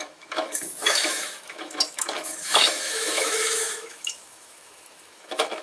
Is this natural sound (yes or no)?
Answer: no